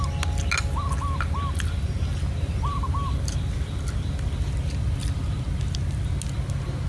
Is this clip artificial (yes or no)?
no